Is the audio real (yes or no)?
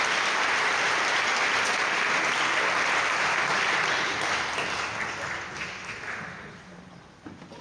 yes